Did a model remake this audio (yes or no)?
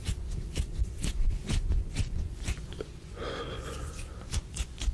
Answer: yes